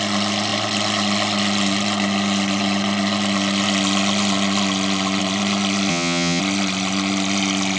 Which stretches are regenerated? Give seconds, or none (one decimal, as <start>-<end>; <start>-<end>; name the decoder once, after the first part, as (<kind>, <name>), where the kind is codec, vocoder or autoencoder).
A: 5.9-6.4 (vocoder, HiFi-GAN)